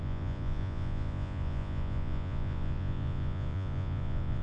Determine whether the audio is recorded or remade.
remade